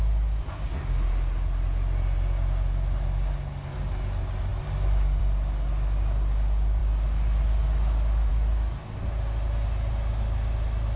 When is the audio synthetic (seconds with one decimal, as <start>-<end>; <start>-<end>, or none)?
none